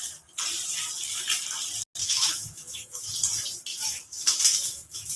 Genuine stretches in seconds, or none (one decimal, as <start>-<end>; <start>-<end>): 0.0-2.0; 3.1-3.7